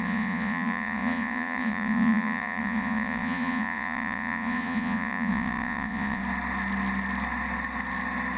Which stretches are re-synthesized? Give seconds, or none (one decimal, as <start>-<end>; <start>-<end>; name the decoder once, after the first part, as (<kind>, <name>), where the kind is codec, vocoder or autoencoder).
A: 0.0-6.2 (vocoder, Vocos)